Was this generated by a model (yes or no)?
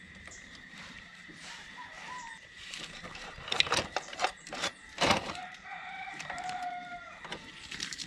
yes